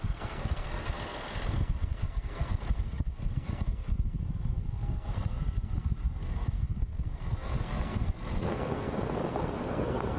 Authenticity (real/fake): fake